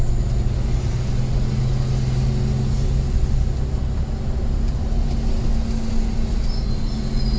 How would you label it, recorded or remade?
recorded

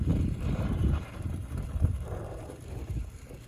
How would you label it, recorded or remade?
remade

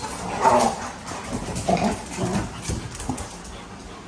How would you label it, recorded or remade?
recorded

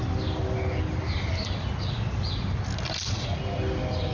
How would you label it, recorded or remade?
recorded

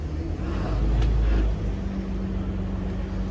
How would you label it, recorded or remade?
recorded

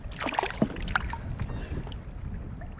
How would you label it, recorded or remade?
recorded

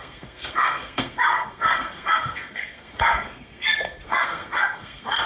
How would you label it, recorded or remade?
remade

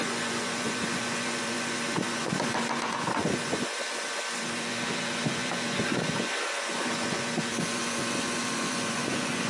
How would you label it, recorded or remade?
remade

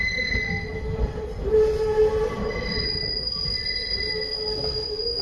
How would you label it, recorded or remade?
recorded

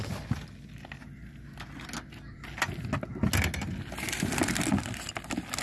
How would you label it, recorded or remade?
recorded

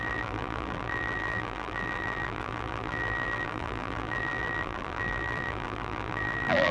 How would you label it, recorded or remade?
remade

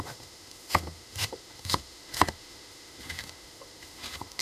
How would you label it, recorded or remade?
remade